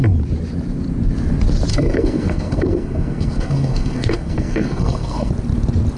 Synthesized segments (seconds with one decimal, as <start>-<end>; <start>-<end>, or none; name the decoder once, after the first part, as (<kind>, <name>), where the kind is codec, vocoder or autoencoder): 1.7-5.3 (codec, SNAC)